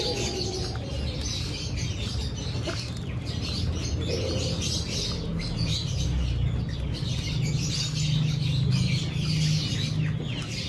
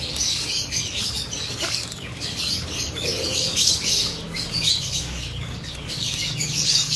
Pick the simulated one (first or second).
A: second